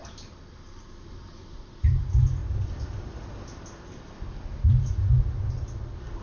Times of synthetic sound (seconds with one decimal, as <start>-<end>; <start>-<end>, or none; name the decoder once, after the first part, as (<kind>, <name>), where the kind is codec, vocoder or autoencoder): none